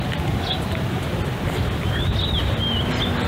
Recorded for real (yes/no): no